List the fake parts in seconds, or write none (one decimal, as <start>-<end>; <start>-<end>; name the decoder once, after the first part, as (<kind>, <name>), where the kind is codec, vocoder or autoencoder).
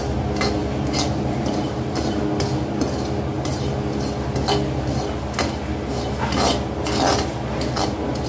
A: 0.6-2.2 (vocoder, BigVGAN v2)